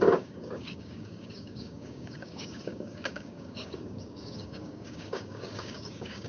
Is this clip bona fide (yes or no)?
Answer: no